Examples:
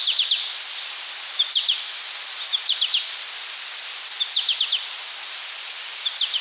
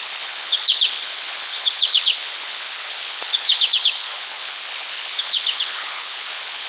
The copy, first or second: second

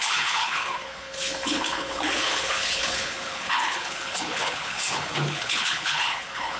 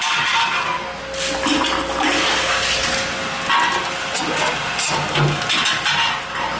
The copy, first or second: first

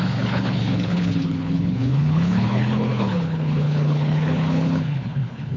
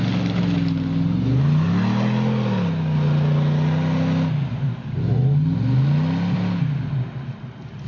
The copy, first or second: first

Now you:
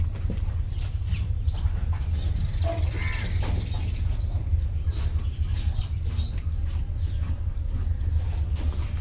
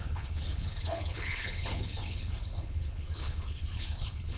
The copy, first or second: second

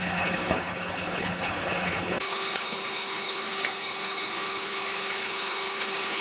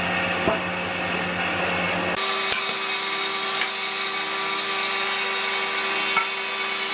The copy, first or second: first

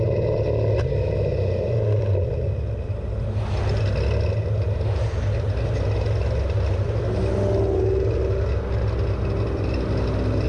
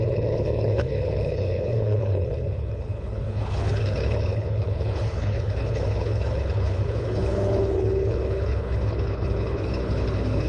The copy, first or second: second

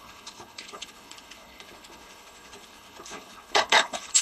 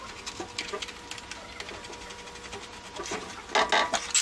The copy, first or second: first